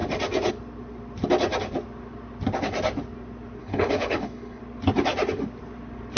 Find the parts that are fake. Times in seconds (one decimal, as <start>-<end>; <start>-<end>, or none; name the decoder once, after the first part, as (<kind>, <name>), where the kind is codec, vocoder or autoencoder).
3.6-4.6 (codec, HILCodec)